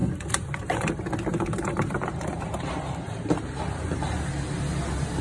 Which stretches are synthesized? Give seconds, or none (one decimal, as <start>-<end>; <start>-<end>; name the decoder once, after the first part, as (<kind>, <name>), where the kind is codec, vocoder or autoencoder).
0.0-0.9 (vocoder, BigVGAN v2); 1.3-4.3